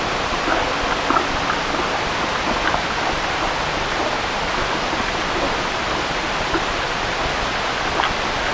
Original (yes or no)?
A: yes